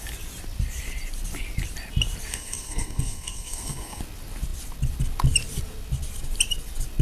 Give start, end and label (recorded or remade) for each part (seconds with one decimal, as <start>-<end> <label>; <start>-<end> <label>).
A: 0.0-2.3 recorded; 2.3-4.0 remade; 4.0-7.0 recorded